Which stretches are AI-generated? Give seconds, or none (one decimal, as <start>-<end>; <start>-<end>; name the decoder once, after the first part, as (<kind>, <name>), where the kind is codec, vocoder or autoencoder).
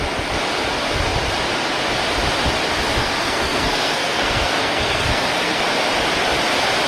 3.0-5.6 (codec, SNAC)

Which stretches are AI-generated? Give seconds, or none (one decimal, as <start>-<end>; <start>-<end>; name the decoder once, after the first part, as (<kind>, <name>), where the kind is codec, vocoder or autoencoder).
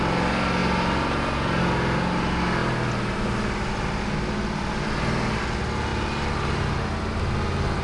none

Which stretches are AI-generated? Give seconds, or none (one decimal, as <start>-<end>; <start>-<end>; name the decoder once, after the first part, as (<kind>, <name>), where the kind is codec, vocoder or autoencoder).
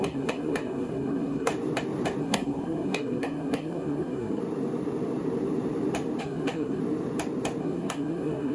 0.0-1.5 (codec, SNAC); 2.2-4.4; 6.2-6.8; 7.6-8.5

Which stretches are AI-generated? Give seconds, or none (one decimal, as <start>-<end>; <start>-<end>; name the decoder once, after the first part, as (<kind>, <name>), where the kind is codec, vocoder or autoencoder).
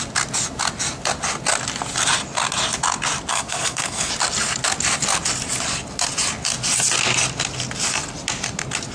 3.3-4.1 (codec, SNAC)